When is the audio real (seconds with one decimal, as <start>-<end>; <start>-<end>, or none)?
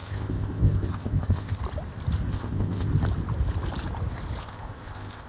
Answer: 1.6-2.3; 2.9-4.4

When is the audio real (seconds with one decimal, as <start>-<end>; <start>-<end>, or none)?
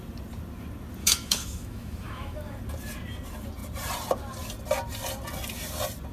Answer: 0.0-1.0; 2.6-6.1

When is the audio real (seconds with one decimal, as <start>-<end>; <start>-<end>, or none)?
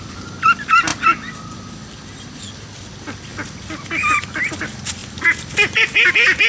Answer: 0.0-6.5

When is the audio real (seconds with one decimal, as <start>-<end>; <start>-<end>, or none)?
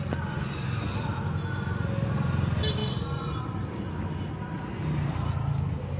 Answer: 0.0-6.0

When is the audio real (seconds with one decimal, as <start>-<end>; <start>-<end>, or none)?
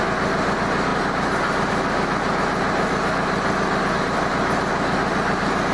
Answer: 0.0-5.7